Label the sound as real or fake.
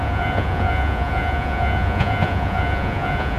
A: fake